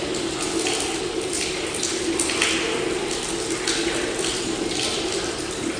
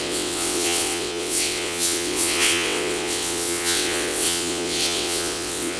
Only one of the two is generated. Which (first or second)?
second